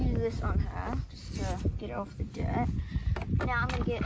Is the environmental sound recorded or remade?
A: recorded